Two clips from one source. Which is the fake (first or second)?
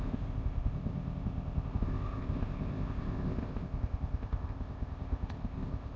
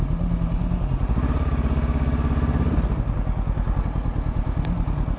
first